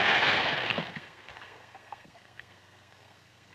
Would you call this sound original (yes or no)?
no